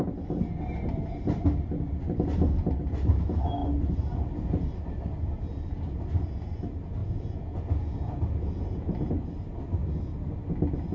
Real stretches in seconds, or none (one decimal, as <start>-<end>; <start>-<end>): 0.0-7.0; 9.1-10.9